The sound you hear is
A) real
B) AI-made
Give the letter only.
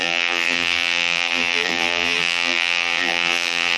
B